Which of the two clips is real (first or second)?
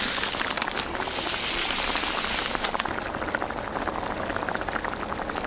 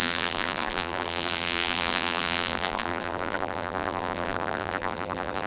first